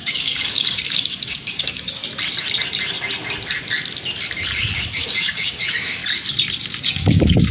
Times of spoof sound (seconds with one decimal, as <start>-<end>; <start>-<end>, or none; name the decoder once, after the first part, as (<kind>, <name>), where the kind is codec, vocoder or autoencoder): 0.0-2.0 (codec, DAC); 4.9-6.0; 6.8-7.5